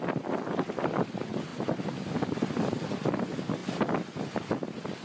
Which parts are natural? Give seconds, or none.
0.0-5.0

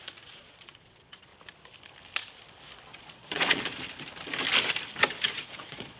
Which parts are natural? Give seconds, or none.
1.3-2.9; 3.7-5.3

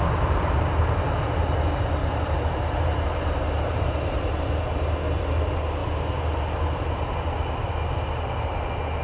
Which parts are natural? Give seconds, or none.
0.0-2.0; 4.4-9.0

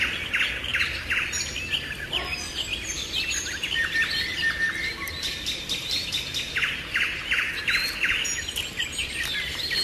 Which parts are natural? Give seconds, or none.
0.0-9.8